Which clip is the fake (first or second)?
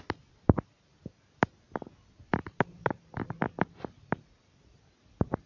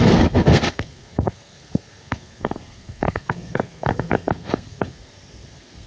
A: second